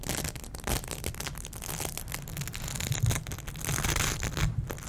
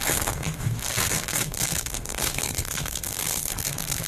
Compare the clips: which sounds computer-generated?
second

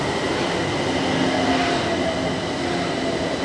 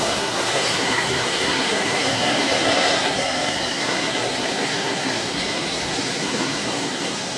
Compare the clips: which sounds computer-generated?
second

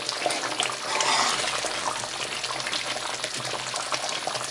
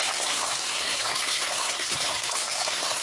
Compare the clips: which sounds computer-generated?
second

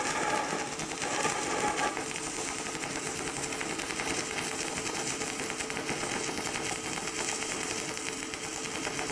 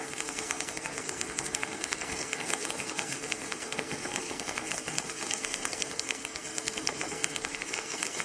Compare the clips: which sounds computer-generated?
second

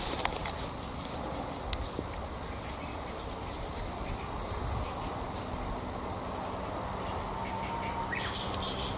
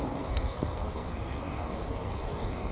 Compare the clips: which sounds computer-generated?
second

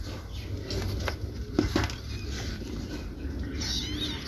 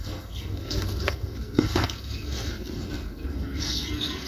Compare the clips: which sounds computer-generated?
second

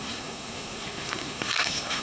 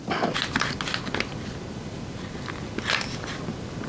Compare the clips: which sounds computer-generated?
first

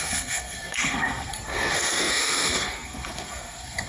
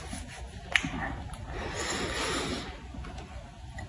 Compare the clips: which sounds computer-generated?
first